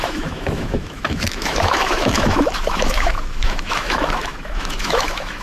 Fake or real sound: fake